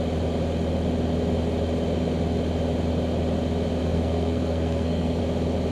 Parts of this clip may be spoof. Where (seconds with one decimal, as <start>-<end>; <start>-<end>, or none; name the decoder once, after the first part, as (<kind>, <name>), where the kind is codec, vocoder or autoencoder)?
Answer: 3.8-5.2 (codec, SNAC)